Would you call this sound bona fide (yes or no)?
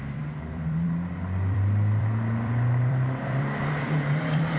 no